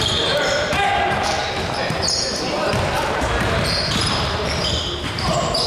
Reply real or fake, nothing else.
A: fake